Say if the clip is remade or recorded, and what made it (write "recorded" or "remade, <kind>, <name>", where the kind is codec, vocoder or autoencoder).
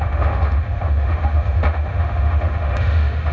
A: remade, autoencoder, DAC-VAE